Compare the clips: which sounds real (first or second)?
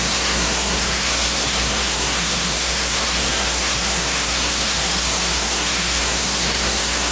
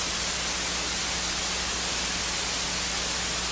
second